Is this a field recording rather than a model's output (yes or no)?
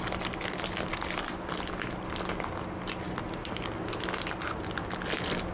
yes